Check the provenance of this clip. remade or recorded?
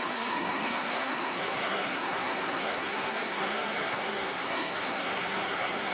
remade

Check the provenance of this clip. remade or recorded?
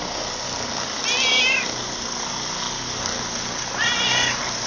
recorded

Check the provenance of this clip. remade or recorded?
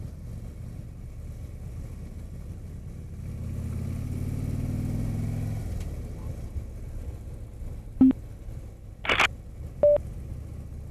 recorded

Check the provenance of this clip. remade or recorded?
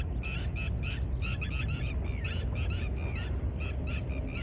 recorded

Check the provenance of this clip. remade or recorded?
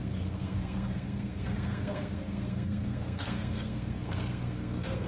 remade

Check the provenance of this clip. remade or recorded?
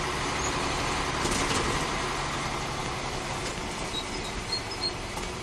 recorded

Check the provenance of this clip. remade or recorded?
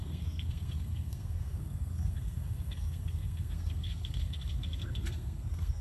remade